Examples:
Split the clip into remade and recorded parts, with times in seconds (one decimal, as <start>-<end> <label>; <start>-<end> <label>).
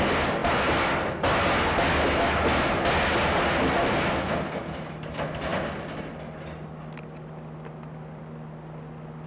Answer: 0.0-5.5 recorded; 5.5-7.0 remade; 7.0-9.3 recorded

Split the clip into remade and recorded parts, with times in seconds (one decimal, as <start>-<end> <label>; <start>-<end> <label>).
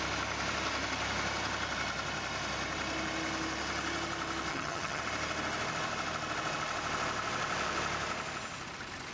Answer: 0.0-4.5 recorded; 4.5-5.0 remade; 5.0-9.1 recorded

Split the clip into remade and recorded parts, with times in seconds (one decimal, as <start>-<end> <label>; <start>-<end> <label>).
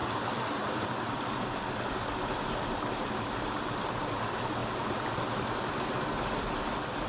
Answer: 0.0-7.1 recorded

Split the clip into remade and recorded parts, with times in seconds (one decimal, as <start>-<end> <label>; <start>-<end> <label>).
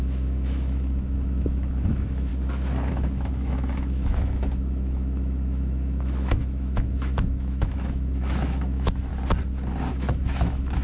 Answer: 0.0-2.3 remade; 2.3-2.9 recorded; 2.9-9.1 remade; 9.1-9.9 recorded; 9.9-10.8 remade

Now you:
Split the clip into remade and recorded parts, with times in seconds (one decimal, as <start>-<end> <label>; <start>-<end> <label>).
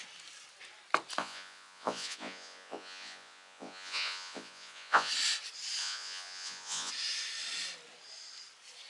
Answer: 0.0-1.2 recorded; 1.2-5.1 remade; 5.1-5.8 recorded; 5.8-6.9 remade; 6.9-8.9 recorded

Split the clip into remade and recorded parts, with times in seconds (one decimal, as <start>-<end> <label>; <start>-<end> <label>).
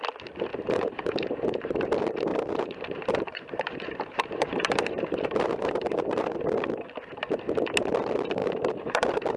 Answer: 0.0-0.5 recorded; 0.5-1.3 remade; 1.3-2.3 recorded; 2.3-6.4 remade; 6.4-8.4 recorded; 8.4-9.4 remade